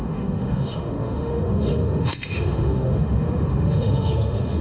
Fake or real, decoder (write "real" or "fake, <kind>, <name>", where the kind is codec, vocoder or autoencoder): fake, autoencoder, DAC-VAE